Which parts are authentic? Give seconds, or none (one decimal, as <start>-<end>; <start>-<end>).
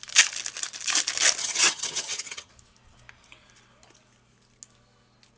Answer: 0.0-1.4; 2.5-5.4